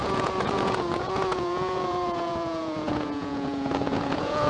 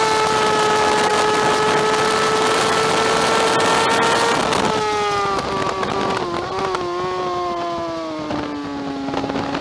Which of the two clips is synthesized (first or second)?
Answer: first